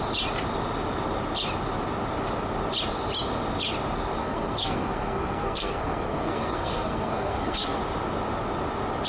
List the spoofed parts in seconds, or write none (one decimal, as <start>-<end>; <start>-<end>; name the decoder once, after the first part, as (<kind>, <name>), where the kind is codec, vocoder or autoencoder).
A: 4.2-7.8 (codec, SNAC)